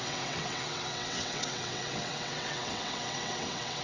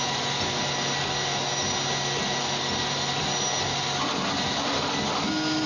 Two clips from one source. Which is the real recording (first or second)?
second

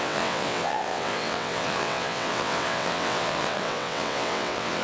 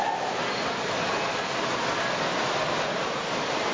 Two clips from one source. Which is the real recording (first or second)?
second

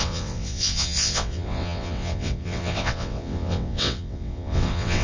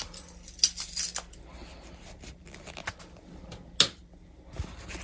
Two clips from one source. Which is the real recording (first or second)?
second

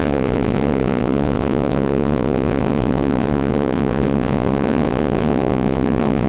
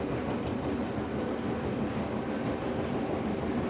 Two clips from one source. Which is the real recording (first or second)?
second